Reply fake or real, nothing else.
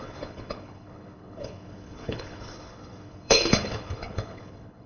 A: fake